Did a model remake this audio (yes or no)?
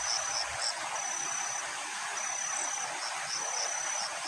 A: no